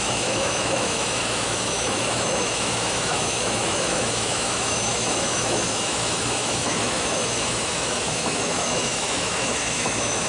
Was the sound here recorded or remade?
remade